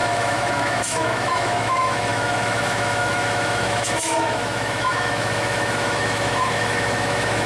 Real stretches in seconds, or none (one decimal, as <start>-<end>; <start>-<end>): none